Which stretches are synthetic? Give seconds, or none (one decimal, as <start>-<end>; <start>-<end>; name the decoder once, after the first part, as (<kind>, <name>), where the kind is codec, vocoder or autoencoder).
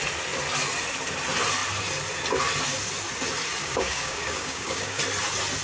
3.6-5.0 (codec, DAC)